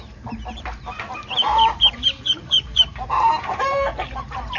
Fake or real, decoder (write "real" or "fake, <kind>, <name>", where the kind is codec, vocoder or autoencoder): fake, vocoder, BigVGAN v2